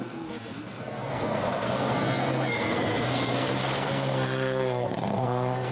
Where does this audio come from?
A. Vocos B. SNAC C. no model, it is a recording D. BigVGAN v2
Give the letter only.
B